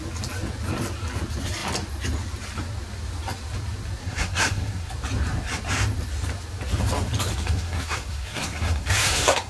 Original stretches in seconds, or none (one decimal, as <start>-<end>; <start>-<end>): 0.0-4.0; 4.9-7.3